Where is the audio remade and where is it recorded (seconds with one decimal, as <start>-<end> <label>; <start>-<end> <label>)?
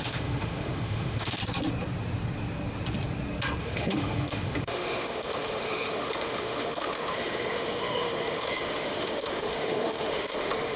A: 0.0-1.4 remade; 1.4-3.6 recorded; 3.6-10.8 remade